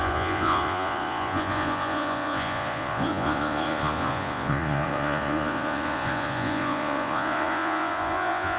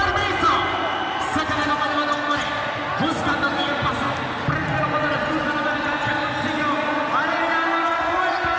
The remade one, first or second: first